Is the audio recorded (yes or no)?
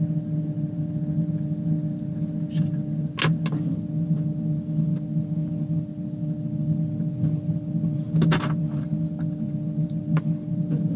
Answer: yes